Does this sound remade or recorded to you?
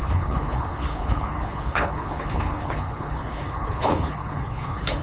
remade